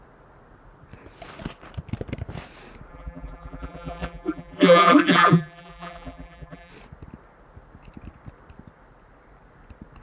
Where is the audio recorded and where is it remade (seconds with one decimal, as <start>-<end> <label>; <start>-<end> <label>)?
0.0-2.9 recorded; 2.9-6.7 remade; 6.7-10.0 recorded